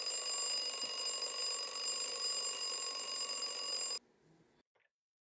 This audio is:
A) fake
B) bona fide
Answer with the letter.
B